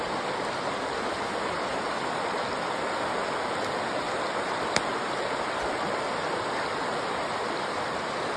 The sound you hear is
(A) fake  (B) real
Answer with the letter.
B